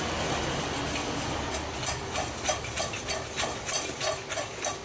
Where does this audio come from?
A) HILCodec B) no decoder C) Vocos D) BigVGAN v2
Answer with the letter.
B